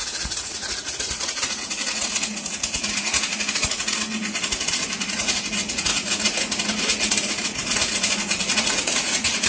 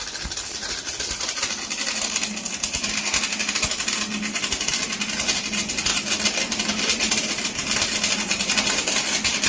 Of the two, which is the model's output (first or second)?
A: first